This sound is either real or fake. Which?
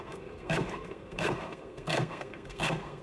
fake